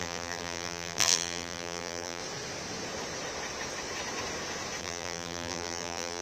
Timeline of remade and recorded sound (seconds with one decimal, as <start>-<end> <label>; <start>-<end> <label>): 0.0-2.2 remade; 2.2-4.8 recorded; 4.8-6.2 remade